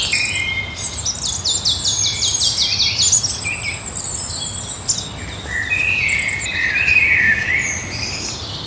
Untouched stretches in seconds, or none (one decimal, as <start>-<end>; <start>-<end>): 0.0-5.8; 7.7-8.7